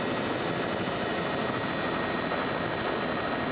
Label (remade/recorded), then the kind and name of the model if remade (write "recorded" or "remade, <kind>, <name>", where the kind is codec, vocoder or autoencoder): recorded